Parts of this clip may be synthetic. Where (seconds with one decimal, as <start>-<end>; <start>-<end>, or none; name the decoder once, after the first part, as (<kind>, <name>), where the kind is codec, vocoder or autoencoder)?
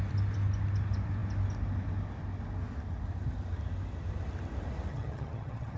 4.9-5.8 (vocoder, HiFi-GAN)